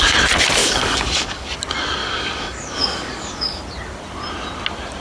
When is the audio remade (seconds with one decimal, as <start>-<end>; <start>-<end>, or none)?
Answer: 0.6-1.5; 2.0-3.6